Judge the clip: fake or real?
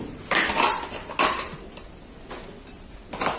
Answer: real